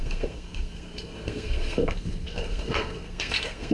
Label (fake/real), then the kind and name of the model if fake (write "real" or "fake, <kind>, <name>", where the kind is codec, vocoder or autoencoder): fake, codec, SNAC